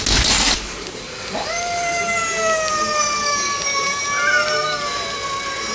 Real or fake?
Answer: real